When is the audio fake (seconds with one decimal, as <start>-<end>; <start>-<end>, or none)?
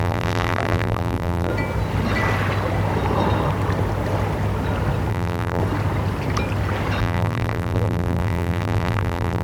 0.0-1.5; 5.1-5.6; 7.0-9.4